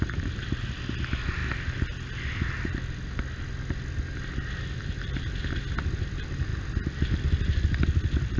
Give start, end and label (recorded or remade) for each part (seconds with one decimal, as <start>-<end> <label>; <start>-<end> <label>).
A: 0.0-8.4 recorded